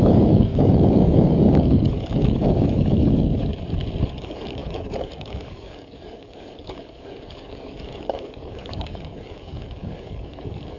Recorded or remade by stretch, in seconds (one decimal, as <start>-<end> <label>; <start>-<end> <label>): 0.0-3.5 remade; 3.5-4.0 recorded; 4.0-10.8 remade